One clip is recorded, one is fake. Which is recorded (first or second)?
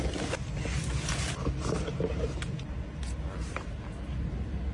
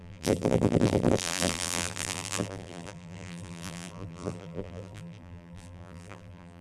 first